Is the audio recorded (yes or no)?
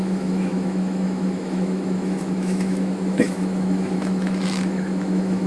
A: no